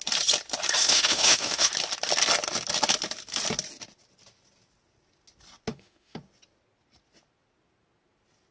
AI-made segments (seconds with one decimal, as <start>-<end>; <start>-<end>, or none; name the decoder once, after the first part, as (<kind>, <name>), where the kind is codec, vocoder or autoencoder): 0.8-1.7 (autoencoder, DAC-VAE); 5.7-6.2